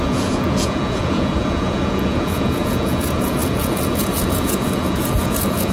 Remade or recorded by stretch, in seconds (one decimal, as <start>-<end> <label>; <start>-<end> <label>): 0.0-5.7 remade